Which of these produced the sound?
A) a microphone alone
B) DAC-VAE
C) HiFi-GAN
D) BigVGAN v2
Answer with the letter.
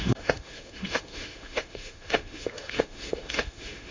B